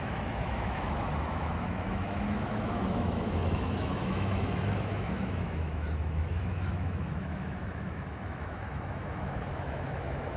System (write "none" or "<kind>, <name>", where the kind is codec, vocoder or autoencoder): autoencoder, DAC-VAE